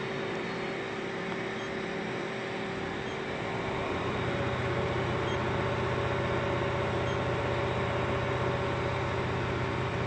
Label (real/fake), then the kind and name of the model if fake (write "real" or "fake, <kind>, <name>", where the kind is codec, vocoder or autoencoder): real